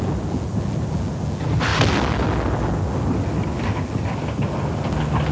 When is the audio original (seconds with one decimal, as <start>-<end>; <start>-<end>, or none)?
0.0-5.3